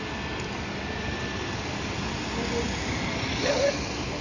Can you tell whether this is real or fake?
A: real